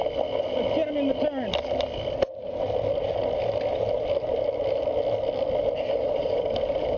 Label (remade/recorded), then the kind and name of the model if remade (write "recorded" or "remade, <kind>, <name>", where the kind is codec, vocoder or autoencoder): recorded